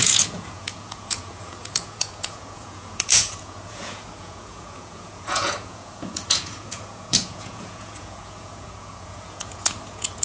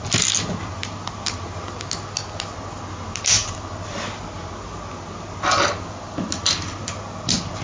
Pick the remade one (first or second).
first